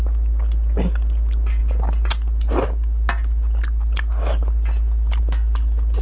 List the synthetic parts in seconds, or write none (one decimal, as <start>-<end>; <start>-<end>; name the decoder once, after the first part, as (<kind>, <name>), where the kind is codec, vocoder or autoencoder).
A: none